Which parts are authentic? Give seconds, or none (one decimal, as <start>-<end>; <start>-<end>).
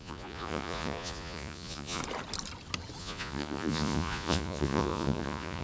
2.0-3.0